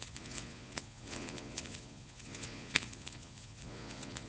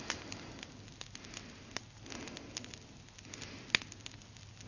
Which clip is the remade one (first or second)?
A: first